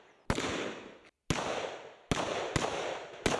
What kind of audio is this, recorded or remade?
recorded